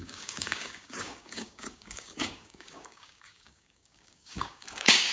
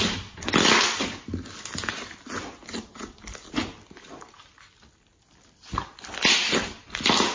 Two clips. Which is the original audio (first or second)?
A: second